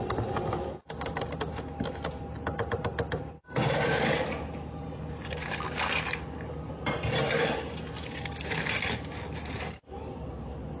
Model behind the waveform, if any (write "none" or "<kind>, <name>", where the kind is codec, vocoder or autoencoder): none